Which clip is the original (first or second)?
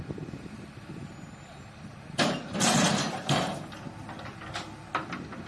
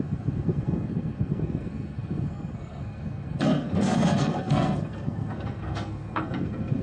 first